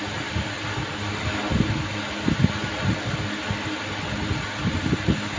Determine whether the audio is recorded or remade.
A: recorded